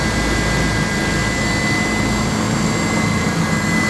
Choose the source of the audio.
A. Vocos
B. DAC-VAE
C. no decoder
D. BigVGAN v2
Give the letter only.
C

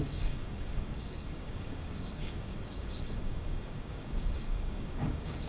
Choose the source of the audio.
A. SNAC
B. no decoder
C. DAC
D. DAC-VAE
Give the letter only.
C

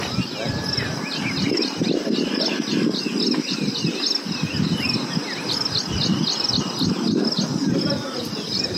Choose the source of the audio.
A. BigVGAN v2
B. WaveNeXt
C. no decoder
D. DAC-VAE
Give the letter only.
C